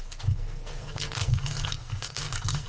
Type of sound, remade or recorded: remade